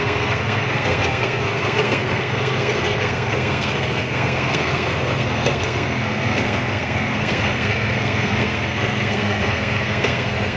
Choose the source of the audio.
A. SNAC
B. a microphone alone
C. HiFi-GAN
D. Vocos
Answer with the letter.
A